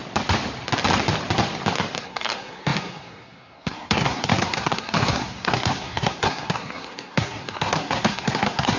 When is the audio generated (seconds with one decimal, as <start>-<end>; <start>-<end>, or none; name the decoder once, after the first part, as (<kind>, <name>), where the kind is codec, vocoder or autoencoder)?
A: 2.0-8.8 (codec, SNAC)